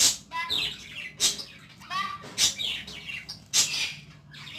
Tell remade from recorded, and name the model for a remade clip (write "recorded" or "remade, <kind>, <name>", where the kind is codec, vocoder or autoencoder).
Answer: recorded